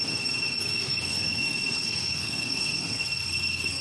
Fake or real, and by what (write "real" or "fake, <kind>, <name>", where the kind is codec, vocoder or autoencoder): fake, codec, SNAC